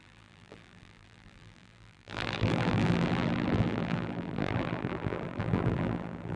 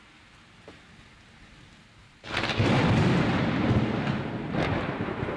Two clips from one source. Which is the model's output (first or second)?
first